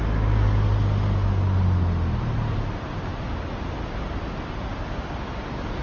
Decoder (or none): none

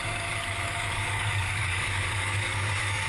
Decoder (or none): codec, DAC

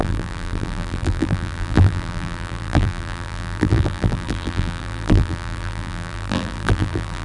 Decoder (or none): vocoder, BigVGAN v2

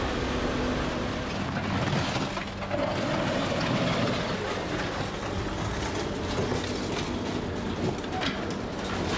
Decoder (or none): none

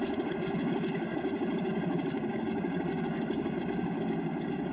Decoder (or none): codec, DAC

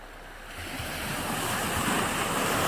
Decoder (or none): none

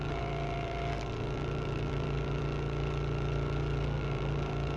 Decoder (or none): vocoder, BigVGAN v2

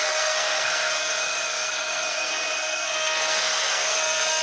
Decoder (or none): codec, SNAC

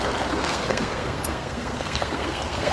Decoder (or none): codec, SNAC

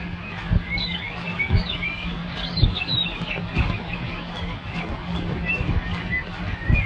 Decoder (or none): codec, DAC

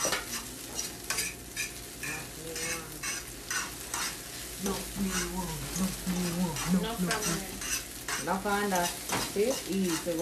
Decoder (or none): none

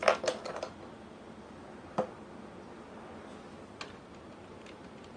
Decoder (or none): none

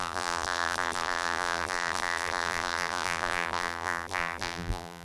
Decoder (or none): vocoder, BigVGAN v2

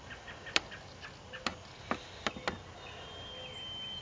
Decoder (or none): none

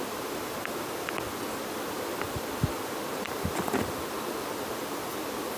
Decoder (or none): vocoder, BigVGAN v2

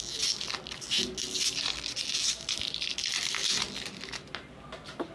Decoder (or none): none